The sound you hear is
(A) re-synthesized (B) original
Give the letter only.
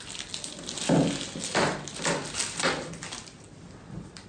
B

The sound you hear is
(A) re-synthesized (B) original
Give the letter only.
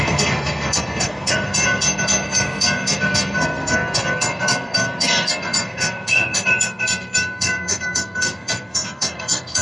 A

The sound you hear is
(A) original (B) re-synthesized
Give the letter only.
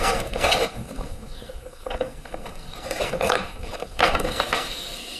B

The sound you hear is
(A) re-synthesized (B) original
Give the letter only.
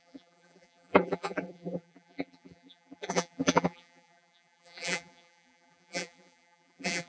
A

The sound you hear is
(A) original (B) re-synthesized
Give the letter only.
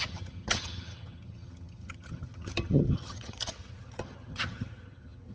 B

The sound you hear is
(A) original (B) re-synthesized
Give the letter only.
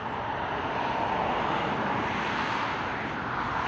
A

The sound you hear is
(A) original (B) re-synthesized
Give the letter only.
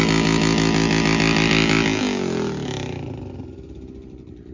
A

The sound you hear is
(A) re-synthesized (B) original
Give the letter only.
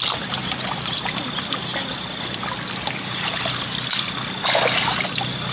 B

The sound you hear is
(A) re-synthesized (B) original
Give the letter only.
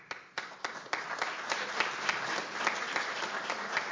B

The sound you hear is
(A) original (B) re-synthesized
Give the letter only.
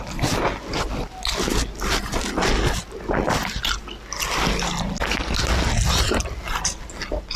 A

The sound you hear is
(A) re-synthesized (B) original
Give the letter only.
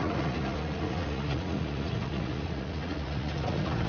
A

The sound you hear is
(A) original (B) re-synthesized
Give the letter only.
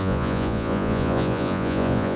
B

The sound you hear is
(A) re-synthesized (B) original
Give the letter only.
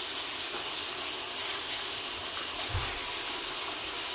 B